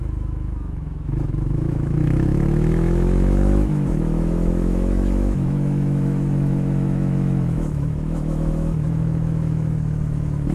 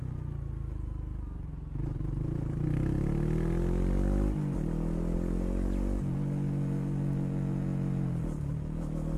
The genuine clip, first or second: second